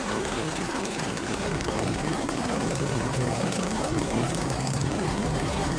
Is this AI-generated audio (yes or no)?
yes